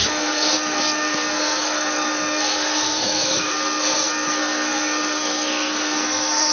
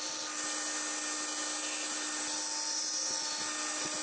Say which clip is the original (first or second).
second